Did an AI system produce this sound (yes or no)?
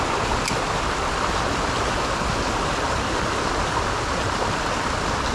no